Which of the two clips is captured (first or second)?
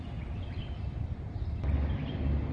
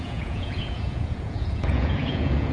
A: first